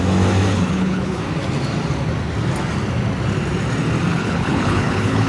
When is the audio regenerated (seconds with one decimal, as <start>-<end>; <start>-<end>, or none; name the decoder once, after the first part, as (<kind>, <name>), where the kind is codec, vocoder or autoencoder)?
0.5-1.2 (codec, HILCodec); 4.1-5.3